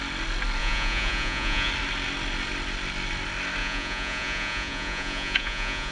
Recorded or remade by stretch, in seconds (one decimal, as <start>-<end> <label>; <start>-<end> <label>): 0.0-0.6 recorded; 0.6-1.7 remade; 1.7-3.6 recorded; 3.6-5.9 remade